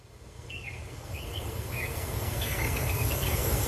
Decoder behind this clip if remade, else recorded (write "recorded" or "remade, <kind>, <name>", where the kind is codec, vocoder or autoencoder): remade, codec, SNAC